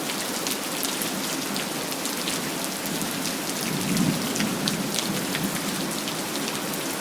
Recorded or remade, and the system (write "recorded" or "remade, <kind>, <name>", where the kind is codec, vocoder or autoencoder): recorded